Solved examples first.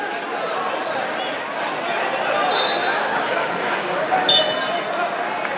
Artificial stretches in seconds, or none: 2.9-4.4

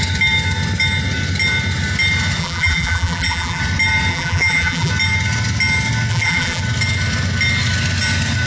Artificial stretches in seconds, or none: 2.4-3.6; 4.1-4.9; 6.1-6.6